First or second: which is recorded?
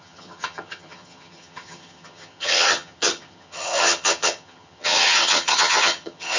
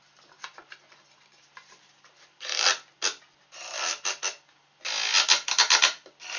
second